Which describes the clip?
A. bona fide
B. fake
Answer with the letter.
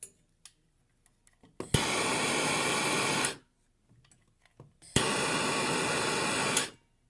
A